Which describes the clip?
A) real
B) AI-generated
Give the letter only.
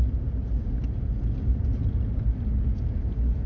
A